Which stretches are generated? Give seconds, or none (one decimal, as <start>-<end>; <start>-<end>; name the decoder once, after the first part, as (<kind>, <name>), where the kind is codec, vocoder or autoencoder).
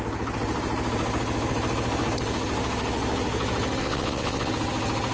3.8-4.5 (vocoder, WaveNeXt)